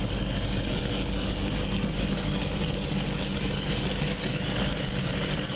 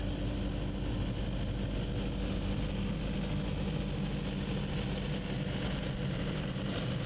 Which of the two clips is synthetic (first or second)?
first